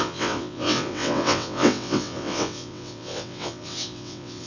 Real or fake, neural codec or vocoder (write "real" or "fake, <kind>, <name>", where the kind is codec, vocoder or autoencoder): fake, vocoder, WaveNeXt